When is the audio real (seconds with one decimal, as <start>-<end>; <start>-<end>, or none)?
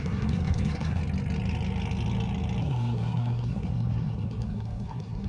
1.0-2.6